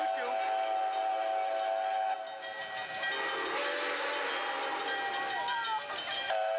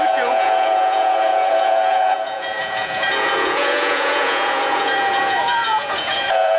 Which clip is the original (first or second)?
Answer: first